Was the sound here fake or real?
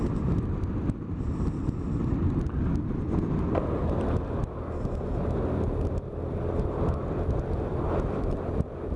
real